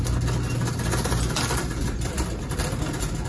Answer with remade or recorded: recorded